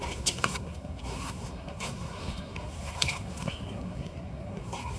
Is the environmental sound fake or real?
fake